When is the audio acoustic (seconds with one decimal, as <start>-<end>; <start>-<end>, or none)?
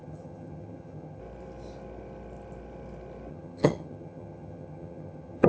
1.2-3.3